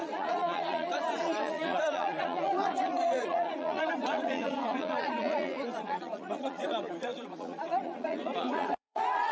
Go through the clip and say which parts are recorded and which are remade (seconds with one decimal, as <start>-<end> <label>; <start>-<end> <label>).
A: 0.0-9.3 remade